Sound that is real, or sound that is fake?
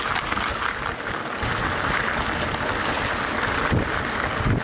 real